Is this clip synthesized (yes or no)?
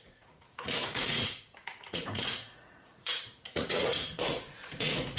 yes